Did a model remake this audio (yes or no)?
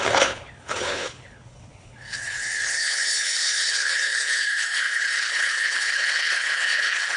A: yes